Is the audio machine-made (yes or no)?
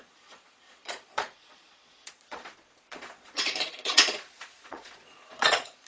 yes